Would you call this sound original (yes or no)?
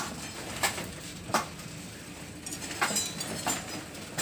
yes